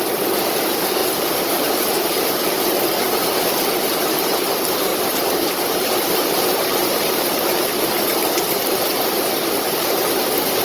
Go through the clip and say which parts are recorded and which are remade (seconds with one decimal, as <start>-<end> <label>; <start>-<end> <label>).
0.0-1.0 recorded; 1.0-2.7 remade; 2.7-4.9 recorded; 4.9-7.8 remade; 7.8-10.6 recorded